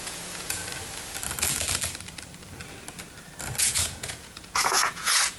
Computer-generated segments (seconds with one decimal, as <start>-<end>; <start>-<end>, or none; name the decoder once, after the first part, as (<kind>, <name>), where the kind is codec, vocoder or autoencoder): 0.0-0.6 (vocoder, Vocos); 3.6-5.4